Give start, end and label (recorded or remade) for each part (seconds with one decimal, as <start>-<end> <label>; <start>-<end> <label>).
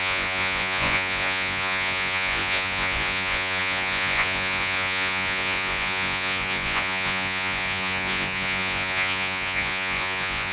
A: 0.0-10.5 remade